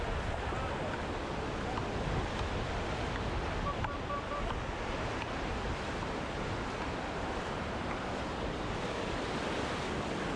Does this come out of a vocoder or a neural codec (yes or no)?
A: no